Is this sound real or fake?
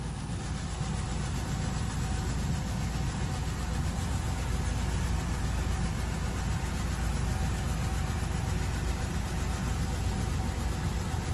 real